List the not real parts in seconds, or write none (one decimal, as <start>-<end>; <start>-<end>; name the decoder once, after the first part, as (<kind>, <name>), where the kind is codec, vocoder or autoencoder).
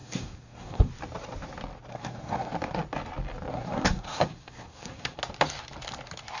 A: 0.0-0.9 (codec, SNAC); 1.9-2.5; 3.5-5.2